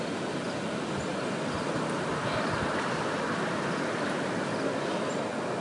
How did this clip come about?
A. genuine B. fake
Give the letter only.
A